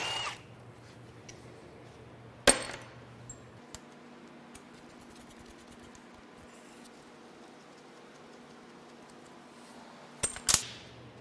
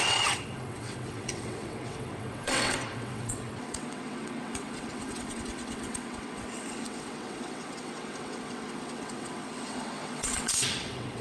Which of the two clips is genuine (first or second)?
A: first